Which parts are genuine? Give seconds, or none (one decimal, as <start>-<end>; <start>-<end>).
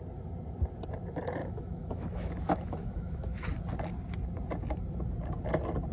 0.0-1.4; 3.6-5.9